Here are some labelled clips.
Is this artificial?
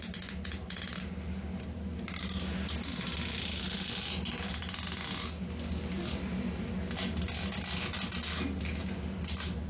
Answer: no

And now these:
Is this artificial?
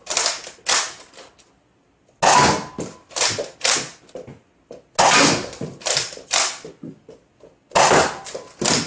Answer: no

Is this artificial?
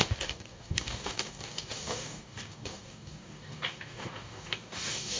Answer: yes